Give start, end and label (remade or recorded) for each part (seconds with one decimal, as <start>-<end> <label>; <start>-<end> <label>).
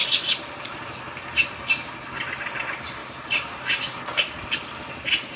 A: 0.0-0.8 remade; 0.8-3.0 recorded; 3.0-4.0 remade; 4.0-5.4 recorded